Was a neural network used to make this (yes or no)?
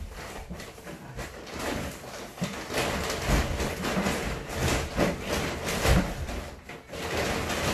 no